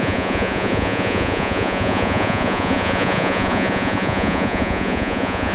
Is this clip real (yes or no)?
no